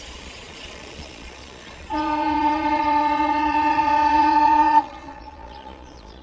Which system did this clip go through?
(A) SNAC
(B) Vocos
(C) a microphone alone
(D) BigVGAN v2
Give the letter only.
B